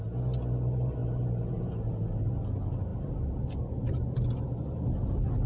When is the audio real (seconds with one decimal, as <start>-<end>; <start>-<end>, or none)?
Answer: 0.0-1.0; 1.7-5.5